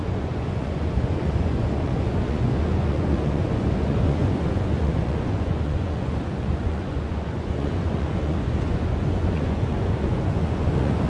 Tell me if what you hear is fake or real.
fake